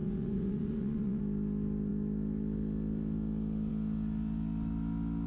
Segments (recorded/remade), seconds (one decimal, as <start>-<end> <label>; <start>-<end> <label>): 0.0-1.2 remade; 1.2-5.3 recorded